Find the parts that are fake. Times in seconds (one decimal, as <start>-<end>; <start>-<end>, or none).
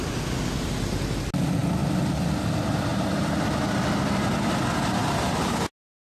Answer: 2.9-3.6